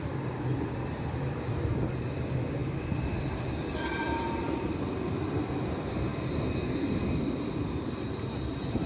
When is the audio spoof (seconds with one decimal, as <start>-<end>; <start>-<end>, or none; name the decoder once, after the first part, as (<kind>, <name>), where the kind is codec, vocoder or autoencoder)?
0.0-6.1 (vocoder, BigVGAN v2)